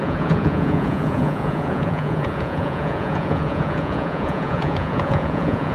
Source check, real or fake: fake